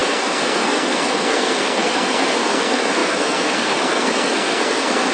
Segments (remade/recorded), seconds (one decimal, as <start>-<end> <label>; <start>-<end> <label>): 0.0-5.1 remade